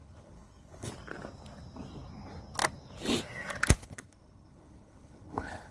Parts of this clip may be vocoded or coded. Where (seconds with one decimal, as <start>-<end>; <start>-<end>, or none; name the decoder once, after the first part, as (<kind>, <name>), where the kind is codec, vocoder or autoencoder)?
0.0-0.9 (codec, HILCodec); 3.8-5.7